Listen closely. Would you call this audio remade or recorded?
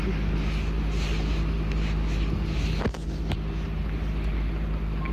recorded